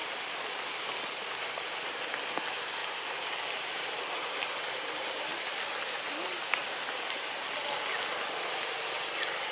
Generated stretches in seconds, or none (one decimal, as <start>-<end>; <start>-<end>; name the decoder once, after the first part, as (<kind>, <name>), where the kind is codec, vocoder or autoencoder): none